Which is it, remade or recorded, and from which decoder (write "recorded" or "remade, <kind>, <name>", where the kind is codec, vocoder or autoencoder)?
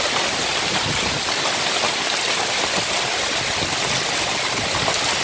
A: recorded